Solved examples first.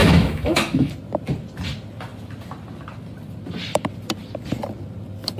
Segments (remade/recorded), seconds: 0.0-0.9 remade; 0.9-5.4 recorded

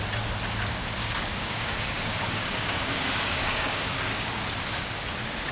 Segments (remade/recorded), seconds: 0.0-1.0 recorded; 1.0-4.3 remade; 4.3-5.5 recorded